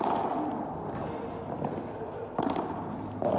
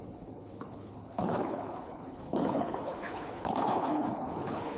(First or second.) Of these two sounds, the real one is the first